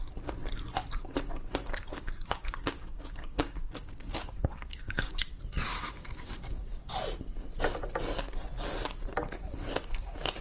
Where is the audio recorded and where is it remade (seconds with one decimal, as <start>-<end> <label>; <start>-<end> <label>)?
0.0-1.6 recorded; 1.6-5.3 remade; 5.3-5.7 recorded; 5.7-6.9 remade; 6.9-10.4 recorded